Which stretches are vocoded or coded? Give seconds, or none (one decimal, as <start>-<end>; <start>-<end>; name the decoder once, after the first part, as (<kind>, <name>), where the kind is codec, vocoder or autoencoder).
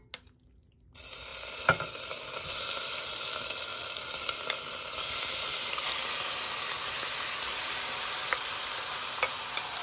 none